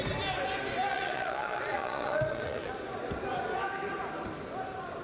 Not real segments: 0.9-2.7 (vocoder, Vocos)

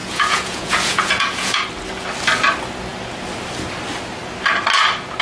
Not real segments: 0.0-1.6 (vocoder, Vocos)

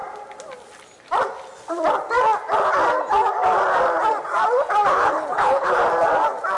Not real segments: 4.9-5.8 (codec, HILCodec)